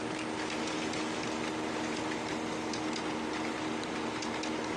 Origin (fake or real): real